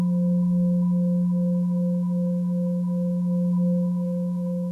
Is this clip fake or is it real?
fake